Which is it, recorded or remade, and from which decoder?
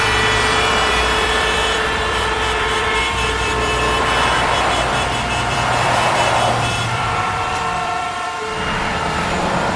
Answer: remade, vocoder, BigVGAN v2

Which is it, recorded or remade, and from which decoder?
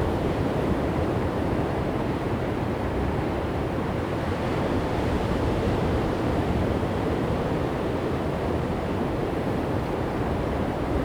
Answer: remade, vocoder, BigVGAN v2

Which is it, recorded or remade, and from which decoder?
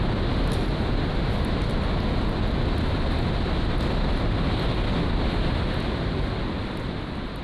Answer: recorded